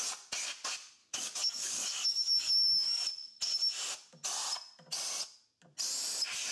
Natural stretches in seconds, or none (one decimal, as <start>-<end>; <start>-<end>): 0.0-1.0; 3.0-6.5